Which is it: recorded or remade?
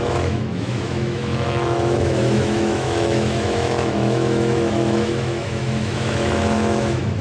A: remade